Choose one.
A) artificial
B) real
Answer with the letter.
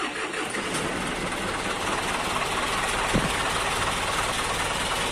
B